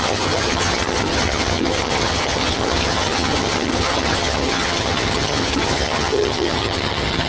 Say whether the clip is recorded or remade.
remade